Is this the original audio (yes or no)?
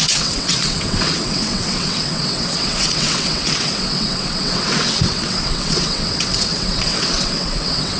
no